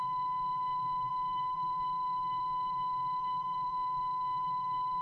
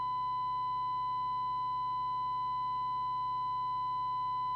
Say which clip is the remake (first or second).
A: first